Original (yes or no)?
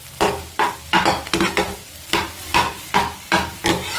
no